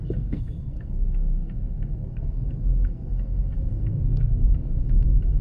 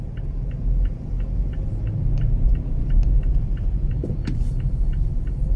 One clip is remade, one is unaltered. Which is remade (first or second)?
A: first